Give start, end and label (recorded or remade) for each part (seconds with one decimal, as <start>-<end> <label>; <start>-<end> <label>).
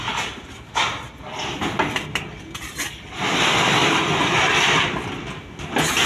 0.0-3.8 recorded; 3.8-4.8 remade; 4.8-6.1 recorded